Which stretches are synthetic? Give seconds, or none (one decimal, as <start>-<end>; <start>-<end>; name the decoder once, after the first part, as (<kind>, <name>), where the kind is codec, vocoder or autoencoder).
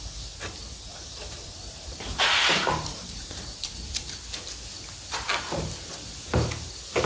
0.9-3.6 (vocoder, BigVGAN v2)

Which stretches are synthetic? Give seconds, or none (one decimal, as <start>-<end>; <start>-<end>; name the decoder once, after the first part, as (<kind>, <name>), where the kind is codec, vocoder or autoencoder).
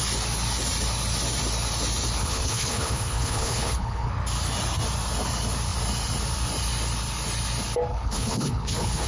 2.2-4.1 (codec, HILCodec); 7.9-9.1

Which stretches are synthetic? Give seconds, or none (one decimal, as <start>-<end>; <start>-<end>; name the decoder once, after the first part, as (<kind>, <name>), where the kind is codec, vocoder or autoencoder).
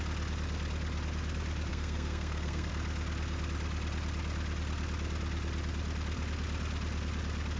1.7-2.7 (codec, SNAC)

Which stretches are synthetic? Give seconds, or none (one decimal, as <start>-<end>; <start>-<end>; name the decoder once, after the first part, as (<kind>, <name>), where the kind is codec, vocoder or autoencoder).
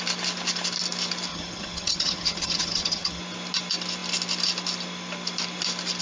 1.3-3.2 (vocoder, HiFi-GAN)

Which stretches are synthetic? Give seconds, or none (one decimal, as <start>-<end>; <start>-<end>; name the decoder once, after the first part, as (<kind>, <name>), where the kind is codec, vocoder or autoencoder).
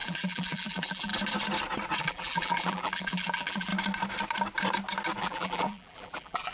0.0-1.1 (vocoder, BigVGAN v2); 2.0-3.7; 5.2-6.5